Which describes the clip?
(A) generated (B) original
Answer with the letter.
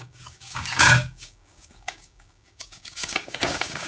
A